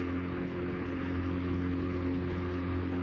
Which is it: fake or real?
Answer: fake